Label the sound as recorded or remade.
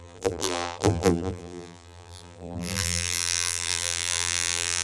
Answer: remade